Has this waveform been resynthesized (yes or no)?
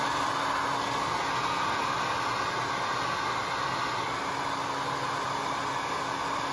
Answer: no